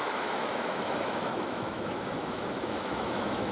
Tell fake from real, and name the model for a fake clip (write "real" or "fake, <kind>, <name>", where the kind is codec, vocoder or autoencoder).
fake, autoencoder, DAC-VAE